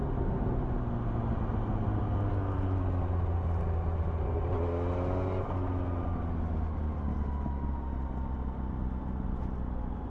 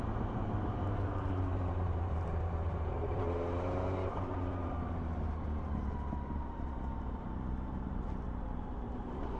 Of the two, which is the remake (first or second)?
second